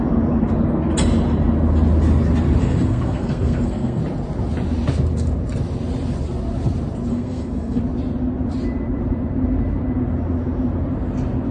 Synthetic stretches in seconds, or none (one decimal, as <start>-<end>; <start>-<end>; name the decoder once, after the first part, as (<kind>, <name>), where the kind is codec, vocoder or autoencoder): 2.6-4.0 (codec, SNAC); 7.1-7.8